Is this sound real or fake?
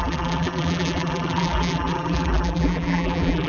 fake